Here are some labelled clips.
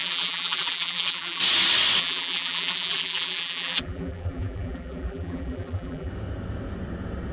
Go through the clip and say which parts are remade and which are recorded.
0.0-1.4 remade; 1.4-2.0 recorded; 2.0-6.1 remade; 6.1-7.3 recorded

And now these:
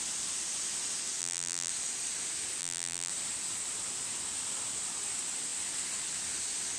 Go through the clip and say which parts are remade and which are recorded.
0.0-1.2 recorded; 1.2-1.7 remade; 1.7-2.6 recorded; 2.6-3.1 remade; 3.1-6.8 recorded